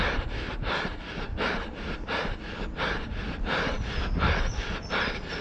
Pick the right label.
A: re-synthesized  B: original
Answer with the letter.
B